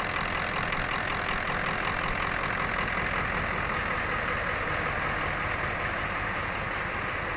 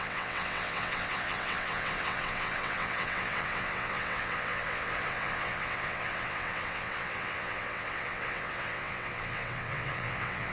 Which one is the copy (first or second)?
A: second